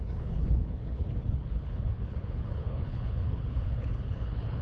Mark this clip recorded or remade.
remade